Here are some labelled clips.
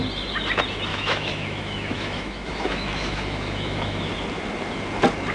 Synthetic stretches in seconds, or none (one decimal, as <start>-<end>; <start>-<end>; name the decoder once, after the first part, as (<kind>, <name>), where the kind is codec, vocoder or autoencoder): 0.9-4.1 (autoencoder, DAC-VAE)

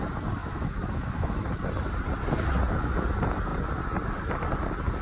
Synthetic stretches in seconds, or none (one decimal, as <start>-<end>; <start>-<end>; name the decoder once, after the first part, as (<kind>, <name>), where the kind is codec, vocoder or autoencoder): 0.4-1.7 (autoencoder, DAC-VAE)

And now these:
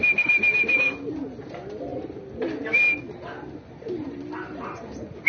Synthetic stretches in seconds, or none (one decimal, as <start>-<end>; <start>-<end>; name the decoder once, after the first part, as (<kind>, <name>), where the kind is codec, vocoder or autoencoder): none

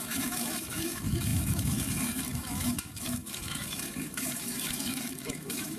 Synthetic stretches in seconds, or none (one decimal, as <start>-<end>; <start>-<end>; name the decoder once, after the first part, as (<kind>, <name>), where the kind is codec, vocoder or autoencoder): 0.0-5.8 (autoencoder, DAC-VAE)